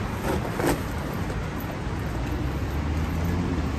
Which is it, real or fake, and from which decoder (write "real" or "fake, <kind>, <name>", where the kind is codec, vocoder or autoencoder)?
real